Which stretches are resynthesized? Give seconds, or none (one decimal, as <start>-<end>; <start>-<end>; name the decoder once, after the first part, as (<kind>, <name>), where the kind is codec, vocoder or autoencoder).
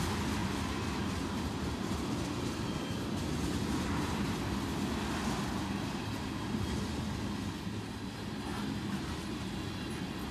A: none